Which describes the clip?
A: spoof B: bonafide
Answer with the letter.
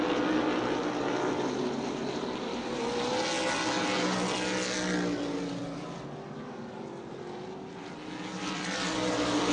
B